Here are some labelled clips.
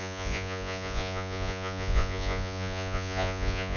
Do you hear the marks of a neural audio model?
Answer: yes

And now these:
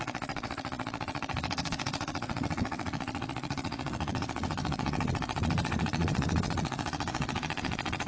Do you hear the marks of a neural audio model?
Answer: yes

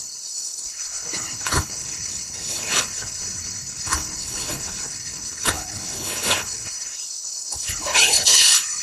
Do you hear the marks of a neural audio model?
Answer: yes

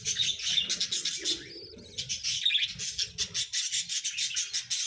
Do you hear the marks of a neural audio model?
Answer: no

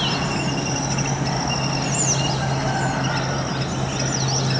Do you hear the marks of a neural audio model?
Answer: no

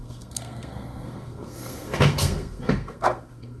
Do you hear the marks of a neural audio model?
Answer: yes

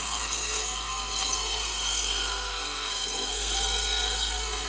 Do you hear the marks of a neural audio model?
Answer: yes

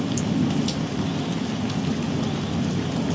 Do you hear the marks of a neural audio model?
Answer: no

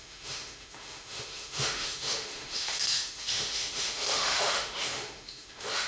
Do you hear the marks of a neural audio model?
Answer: yes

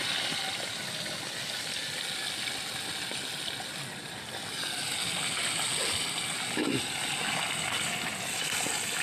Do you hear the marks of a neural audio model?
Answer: no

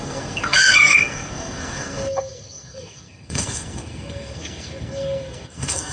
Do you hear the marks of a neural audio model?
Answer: yes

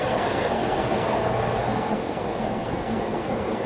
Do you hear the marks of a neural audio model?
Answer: yes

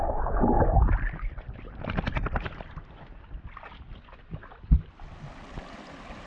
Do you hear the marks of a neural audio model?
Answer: no